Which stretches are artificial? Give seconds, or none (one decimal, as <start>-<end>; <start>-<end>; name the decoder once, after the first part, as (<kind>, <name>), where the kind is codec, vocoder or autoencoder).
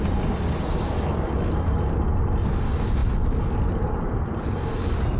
none